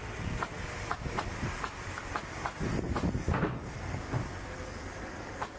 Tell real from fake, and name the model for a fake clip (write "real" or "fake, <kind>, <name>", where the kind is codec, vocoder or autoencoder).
real